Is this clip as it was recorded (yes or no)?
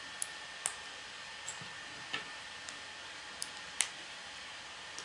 yes